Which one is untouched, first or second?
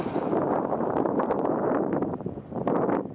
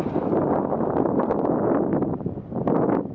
second